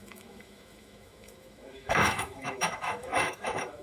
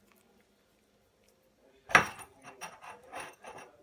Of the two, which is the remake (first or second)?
first